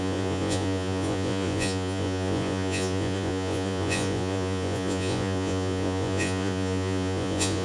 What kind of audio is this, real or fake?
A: fake